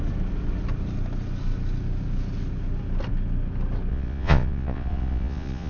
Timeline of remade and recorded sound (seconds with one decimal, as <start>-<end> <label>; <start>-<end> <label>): 0.0-3.9 recorded; 3.9-5.7 remade